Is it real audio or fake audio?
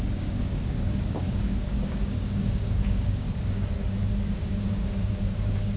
fake